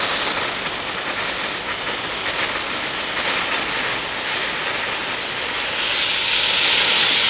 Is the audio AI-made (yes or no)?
no